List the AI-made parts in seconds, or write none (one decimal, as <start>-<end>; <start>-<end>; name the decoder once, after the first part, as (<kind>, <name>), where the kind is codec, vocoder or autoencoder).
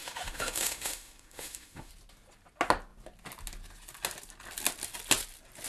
0.0-1.9 (autoencoder, DAC-VAE)